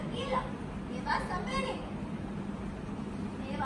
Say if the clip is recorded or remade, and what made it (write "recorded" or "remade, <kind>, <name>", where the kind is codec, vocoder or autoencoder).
recorded